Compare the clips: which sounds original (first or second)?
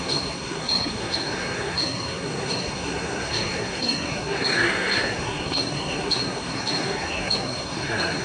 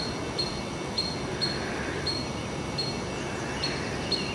second